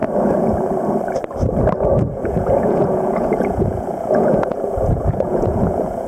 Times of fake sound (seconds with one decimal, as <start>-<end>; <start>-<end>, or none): 2.1-6.1